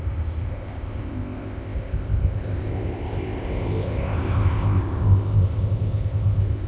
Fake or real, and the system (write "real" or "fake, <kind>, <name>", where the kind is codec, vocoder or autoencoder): fake, codec, ZipCodec